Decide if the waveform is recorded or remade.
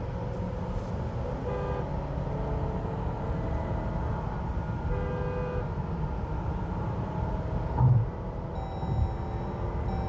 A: recorded